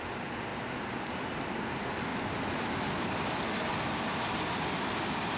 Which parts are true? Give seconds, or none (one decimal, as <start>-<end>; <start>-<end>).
0.0-5.4